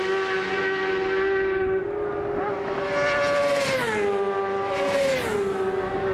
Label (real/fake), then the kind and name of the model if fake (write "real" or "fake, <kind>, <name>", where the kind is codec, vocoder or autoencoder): real